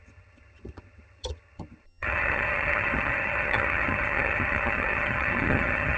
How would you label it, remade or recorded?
remade